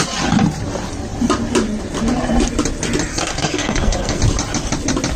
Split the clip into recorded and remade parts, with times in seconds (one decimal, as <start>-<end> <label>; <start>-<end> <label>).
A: 0.0-3.1 recorded; 3.1-4.2 remade; 4.2-5.2 recorded